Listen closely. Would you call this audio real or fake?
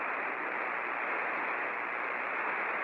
real